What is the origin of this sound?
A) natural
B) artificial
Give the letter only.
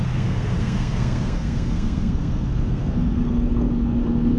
B